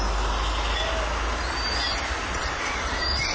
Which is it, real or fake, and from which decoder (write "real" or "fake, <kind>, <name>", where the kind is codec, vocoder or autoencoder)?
real